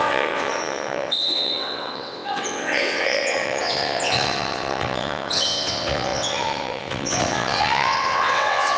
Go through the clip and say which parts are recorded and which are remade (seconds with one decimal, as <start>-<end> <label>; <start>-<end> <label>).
0.0-8.8 remade